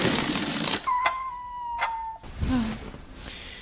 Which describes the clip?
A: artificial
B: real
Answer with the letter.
B